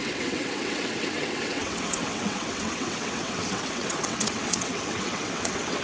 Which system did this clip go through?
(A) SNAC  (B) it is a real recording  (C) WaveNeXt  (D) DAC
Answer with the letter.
C